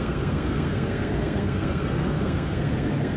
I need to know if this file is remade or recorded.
remade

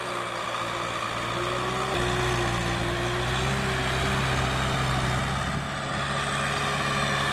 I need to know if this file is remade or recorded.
recorded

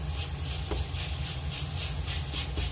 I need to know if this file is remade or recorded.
recorded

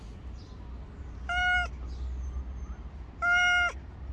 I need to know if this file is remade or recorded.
recorded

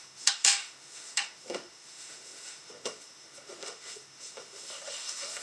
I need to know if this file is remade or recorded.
remade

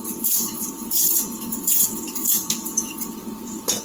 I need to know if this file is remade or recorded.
remade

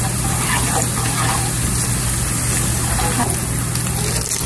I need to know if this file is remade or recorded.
recorded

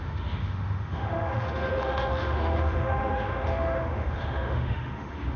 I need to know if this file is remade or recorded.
remade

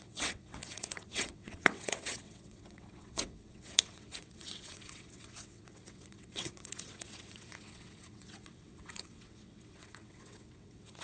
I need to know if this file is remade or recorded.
remade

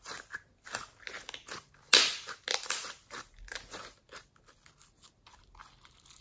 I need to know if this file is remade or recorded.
recorded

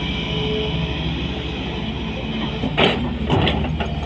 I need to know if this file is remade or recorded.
recorded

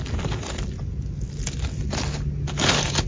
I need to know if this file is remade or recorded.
recorded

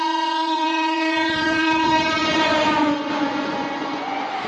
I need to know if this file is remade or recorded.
remade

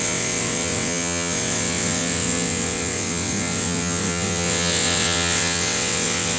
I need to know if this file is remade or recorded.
remade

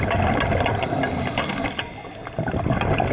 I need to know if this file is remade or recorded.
recorded